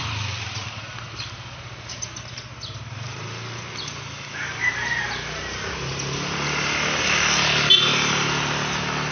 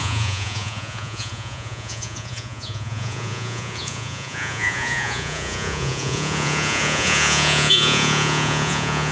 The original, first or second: first